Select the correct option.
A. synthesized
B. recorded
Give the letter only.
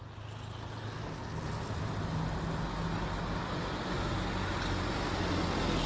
B